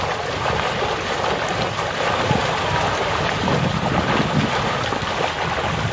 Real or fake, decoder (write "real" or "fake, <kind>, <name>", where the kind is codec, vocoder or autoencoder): real